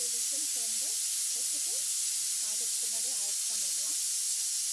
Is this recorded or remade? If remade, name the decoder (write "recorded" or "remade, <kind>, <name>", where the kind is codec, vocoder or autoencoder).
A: recorded